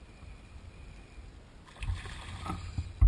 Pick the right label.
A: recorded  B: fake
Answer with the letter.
A